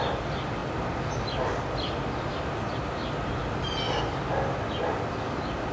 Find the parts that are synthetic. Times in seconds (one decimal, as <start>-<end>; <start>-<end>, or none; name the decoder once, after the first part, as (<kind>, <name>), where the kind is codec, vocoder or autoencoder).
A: none